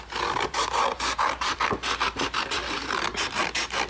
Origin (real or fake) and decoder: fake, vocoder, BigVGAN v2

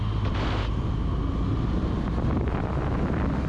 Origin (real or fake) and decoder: real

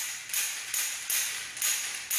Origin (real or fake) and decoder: real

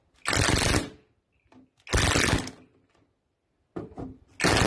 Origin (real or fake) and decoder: real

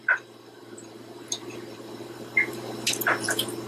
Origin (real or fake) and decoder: fake, vocoder, BigVGAN v2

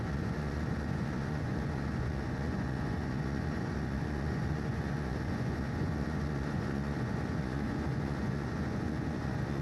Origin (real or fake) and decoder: fake, vocoder, Vocos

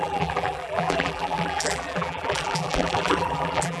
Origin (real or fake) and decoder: fake, vocoder, BigVGAN v2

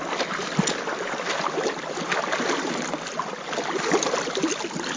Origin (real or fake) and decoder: real